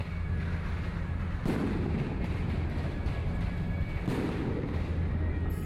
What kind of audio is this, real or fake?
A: real